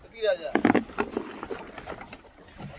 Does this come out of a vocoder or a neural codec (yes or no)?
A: no